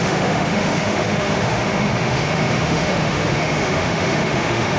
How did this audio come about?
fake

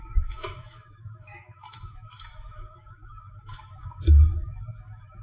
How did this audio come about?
fake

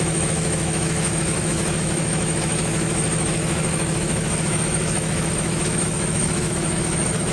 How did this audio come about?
fake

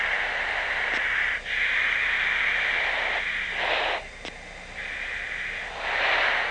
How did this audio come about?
real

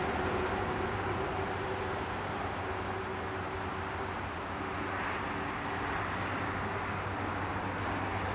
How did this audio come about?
real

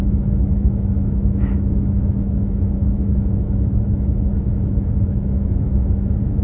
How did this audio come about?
fake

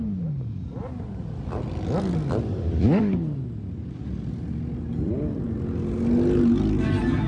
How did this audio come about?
real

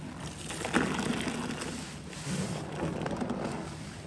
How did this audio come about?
real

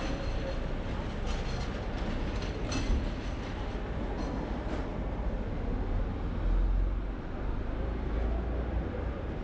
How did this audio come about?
real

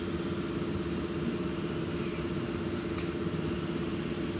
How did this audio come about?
real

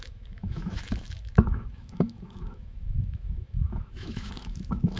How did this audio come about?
fake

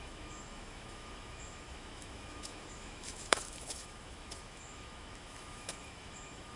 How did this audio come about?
fake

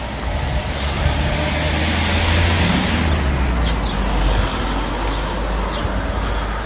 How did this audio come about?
real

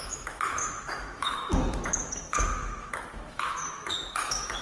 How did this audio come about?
fake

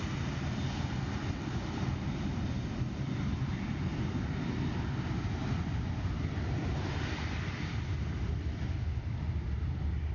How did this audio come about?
real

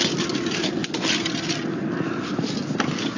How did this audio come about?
real